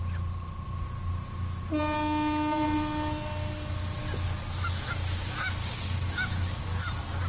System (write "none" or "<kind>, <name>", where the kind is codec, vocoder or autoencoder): none